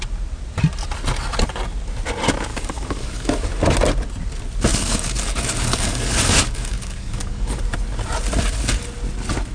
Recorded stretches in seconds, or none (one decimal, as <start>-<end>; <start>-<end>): 0.0-2.5; 3.5-4.7; 7.6-9.5